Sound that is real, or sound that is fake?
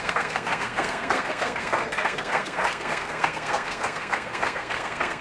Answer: fake